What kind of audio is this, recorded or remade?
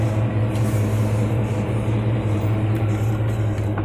remade